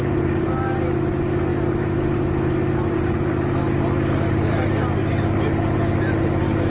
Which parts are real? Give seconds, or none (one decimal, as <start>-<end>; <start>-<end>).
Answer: 0.0-6.7